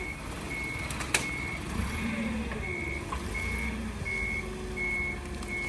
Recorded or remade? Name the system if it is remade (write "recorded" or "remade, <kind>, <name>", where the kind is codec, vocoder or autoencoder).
recorded